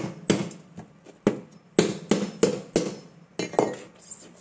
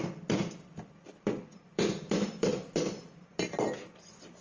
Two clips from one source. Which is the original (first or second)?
first